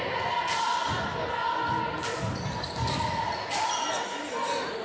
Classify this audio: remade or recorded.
recorded